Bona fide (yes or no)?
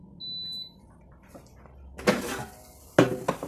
yes